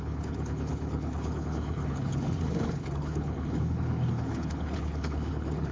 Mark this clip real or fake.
fake